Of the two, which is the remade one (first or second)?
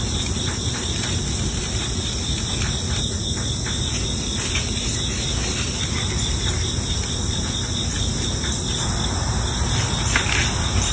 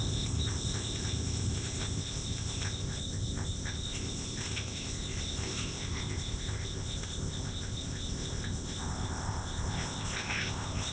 second